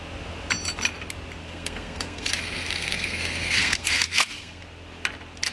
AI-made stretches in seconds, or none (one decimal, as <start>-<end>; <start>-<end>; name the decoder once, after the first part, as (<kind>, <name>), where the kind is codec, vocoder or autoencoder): 1.4-4.6 (codec, SNAC)